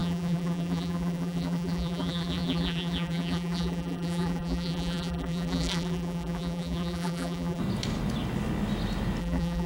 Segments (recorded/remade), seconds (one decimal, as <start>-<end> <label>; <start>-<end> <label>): 0.0-7.6 remade; 7.6-9.2 recorded; 9.2-9.7 remade